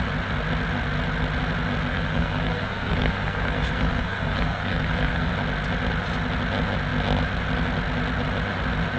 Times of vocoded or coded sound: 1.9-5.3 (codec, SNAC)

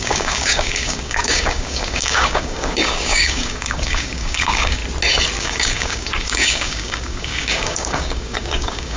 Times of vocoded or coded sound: 0.0-4.8 (codec, DAC); 5.4-9.0

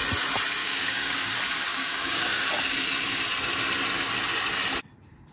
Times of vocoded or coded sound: 0.6-1.2 (codec, DAC); 1.7-2.5

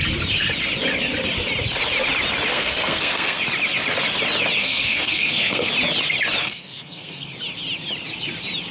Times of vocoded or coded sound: 2.5-3.4 (codec, SNAC); 4.6-5.7; 6.4-7.3

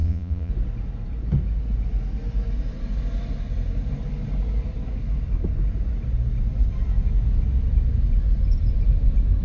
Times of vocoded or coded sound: 0.0-0.5 (vocoder, Vocos)

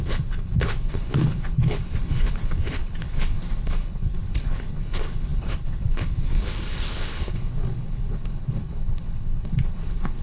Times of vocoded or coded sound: 0.0-10.2 (codec, HILCodec)